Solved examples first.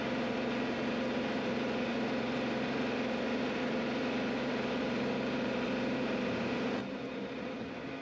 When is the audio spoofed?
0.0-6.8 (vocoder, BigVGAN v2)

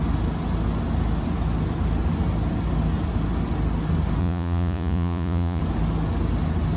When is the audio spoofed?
4.2-5.6 (vocoder, Vocos)